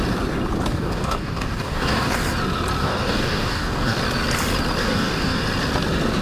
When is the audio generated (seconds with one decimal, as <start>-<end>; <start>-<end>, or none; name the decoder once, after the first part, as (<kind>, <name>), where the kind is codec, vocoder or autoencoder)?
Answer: 0.7-2.1 (codec, DAC); 2.8-4.0; 4.8-5.4